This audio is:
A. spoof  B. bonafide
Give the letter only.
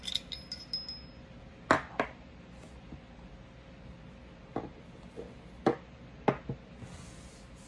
B